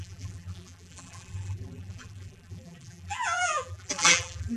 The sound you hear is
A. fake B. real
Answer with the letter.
A